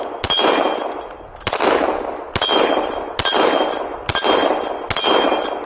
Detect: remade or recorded recorded